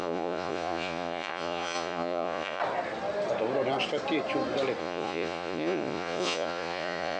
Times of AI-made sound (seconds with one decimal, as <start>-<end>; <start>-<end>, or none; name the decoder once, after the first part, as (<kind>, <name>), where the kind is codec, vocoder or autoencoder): 0.0-2.6 (vocoder, Vocos); 4.8-7.2